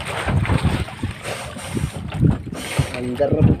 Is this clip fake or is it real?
real